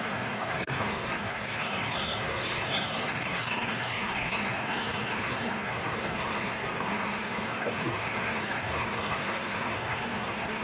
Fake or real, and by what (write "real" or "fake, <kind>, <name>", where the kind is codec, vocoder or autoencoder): fake, codec, SNAC